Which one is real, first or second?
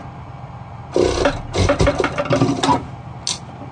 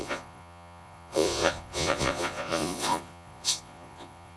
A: first